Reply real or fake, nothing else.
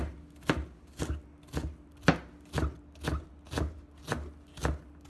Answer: real